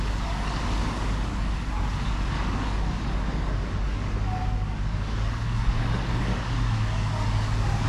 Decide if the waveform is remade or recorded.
remade